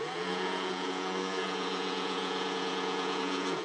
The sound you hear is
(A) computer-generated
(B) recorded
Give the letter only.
A